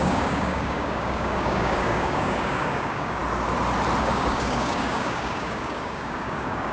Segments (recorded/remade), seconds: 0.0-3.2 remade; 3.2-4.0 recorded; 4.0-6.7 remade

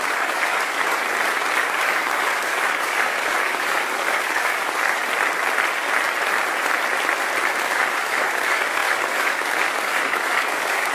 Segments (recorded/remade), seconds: 0.0-1.0 remade; 1.0-1.6 recorded; 1.6-5.0 remade; 5.0-7.5 recorded; 7.5-10.9 remade

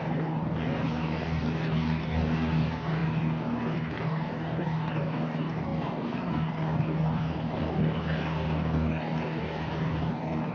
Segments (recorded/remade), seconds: 0.0-10.5 remade

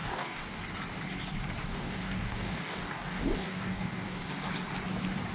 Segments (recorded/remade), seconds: 0.0-0.6 remade; 0.6-1.6 recorded; 1.6-4.3 remade; 4.3-5.3 recorded

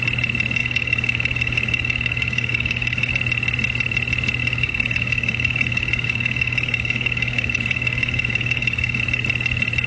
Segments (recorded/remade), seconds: 0.0-0.6 recorded; 0.6-3.1 remade; 3.1-4.4 recorded; 4.4-9.0 remade; 9.0-9.9 recorded

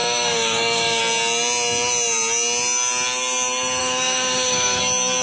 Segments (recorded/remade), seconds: 0.0-1.0 remade; 1.0-3.8 recorded; 3.8-4.8 remade; 4.8-5.2 recorded

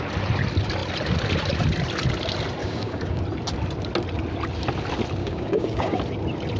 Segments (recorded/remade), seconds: 0.0-2.6 recorded; 2.6-3.2 remade; 3.2-5.2 recorded; 5.2-6.0 remade; 6.0-6.6 recorded

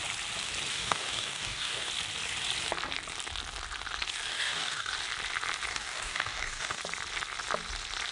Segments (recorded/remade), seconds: 0.0-0.7 recorded; 0.7-1.9 remade; 1.9-4.3 recorded; 4.3-4.9 remade; 4.9-5.7 recorded; 5.7-6.8 remade; 6.8-8.1 recorded